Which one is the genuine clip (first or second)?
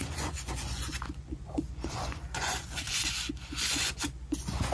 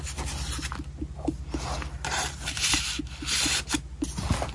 second